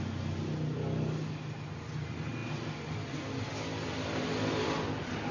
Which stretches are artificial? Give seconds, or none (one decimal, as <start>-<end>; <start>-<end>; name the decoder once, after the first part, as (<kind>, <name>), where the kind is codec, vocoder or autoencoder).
none